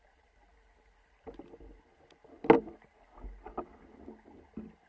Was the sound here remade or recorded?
recorded